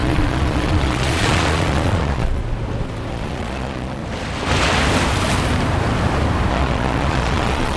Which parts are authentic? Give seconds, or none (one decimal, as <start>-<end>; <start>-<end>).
2.4-3.1; 4.0-6.5